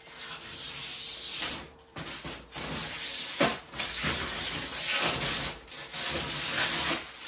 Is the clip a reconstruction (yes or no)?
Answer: no